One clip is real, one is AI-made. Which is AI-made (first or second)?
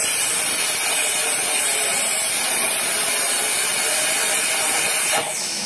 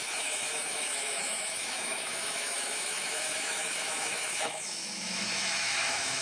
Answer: second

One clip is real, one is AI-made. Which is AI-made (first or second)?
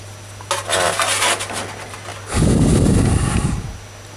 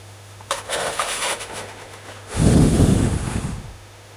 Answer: second